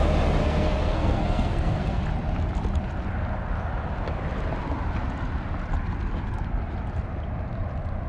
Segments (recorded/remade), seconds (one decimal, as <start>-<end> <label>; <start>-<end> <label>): 0.0-0.4 recorded; 0.4-2.0 remade; 2.0-8.1 recorded